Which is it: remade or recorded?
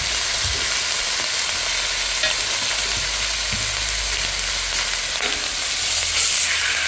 recorded